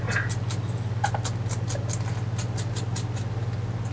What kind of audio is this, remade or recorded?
recorded